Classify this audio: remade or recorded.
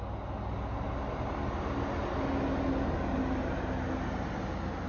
recorded